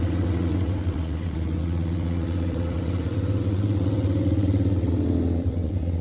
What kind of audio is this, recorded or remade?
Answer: remade